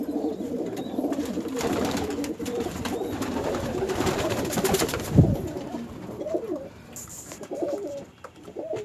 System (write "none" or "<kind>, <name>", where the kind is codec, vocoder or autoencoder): vocoder, BigVGAN v2